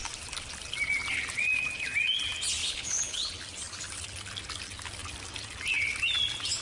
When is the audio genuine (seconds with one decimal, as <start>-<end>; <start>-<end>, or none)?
0.0-2.6; 3.3-6.6